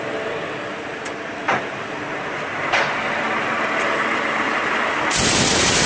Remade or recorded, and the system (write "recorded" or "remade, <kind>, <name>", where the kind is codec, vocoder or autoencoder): recorded